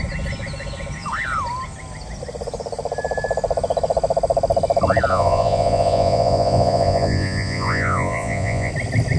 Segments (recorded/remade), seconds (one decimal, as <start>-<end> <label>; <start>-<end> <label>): 0.0-5.1 recorded; 5.1-8.7 remade; 8.7-9.2 recorded